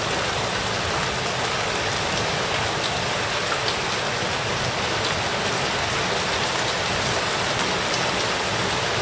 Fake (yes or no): no